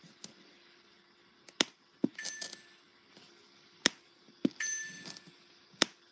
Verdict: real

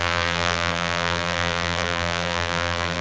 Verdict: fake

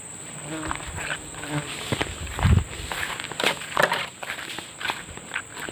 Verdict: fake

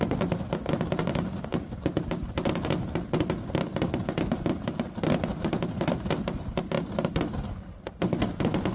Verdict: real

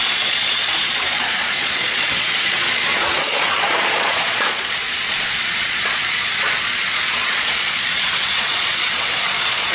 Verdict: fake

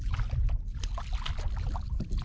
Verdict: real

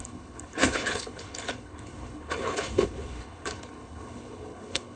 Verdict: fake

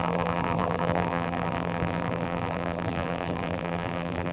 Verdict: fake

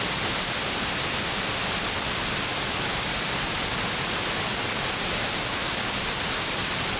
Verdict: fake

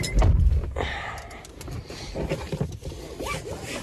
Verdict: real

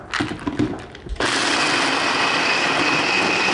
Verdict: real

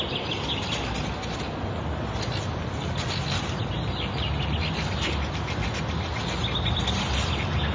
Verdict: real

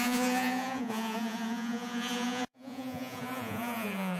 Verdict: fake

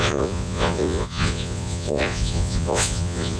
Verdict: fake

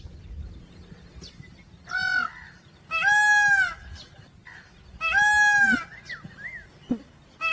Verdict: real